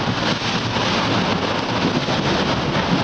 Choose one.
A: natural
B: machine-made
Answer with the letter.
A